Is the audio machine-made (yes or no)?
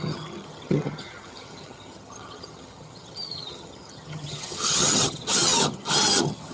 yes